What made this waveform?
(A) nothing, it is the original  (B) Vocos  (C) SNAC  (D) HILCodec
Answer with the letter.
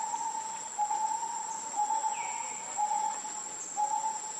A